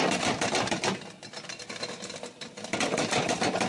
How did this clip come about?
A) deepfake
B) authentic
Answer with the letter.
B